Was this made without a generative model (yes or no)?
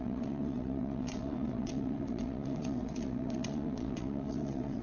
no